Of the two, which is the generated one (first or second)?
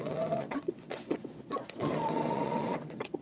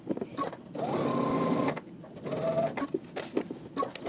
first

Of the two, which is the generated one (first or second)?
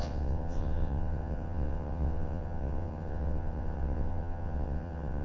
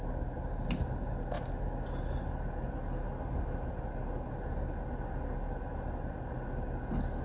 first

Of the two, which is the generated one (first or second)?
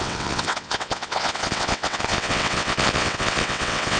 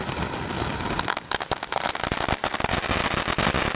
first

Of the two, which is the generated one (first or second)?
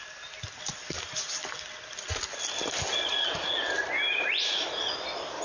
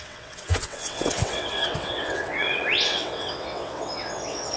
second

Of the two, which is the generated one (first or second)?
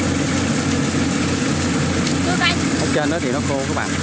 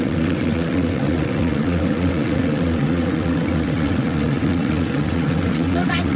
second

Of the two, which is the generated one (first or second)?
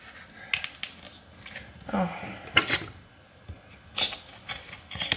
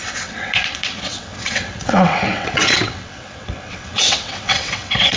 second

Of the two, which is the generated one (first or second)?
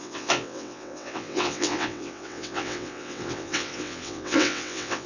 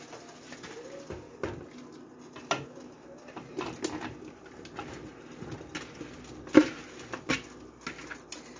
first